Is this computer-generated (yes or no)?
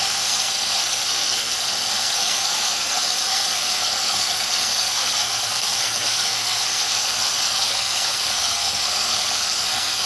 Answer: yes